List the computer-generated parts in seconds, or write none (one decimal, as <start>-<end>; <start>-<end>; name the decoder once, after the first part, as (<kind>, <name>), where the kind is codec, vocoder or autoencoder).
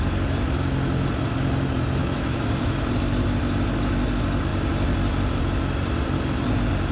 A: 2.0-2.9 (autoencoder, DAC-VAE)